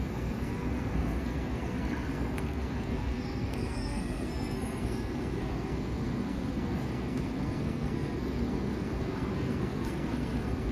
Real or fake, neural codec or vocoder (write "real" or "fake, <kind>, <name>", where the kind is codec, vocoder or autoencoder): fake, codec, SNAC